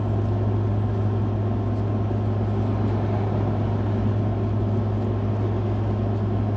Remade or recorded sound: recorded